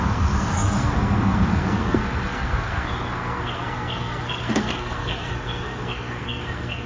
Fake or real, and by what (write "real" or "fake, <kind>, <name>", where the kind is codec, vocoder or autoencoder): fake, codec, SNAC